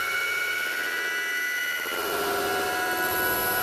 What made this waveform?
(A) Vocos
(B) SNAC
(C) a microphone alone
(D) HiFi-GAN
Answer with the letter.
C